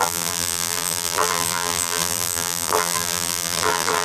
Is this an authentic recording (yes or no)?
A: no